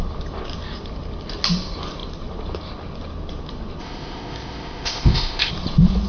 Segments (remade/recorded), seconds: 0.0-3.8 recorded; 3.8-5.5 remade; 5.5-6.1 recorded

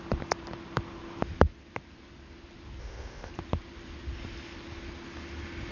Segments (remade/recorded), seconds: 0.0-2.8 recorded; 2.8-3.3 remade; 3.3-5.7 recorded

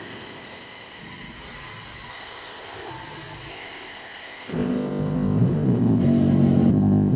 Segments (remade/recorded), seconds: 0.0-1.0 remade; 1.0-2.1 recorded; 2.1-2.9 remade; 2.9-3.5 recorded; 3.5-6.0 remade; 6.0-6.7 recorded; 6.7-7.2 remade

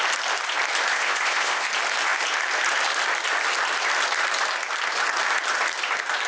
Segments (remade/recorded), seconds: 0.0-0.9 recorded; 0.9-1.7 remade; 1.7-6.3 recorded